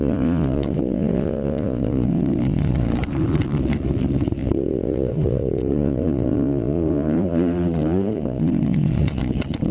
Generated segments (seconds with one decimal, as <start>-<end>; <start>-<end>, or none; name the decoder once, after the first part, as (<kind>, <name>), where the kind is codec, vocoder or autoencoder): 0.0-9.7 (vocoder, Vocos)

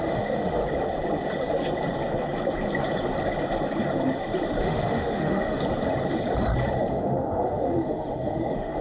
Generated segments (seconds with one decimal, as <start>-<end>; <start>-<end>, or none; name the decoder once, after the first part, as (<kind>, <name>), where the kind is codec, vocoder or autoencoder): 0.0-0.6 (autoencoder, DAC-VAE); 4.6-5.6; 6.9-8.8

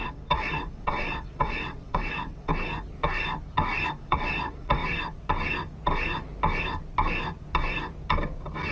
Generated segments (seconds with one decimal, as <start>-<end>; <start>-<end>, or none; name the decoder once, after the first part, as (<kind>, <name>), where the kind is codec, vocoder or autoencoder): 0.0-2.5 (vocoder, WaveNeXt); 4.0-4.8